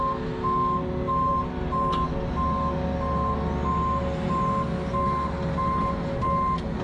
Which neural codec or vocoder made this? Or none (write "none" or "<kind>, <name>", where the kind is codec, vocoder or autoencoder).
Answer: none